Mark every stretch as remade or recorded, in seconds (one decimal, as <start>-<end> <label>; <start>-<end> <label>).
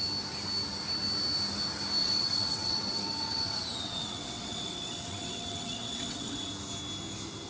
0.0-2.0 recorded; 2.0-6.5 remade; 6.5-7.5 recorded